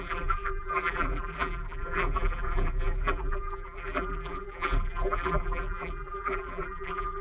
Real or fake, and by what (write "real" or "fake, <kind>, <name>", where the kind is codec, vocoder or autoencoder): fake, vocoder, BigVGAN v2